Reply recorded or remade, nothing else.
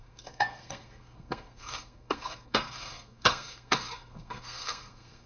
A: remade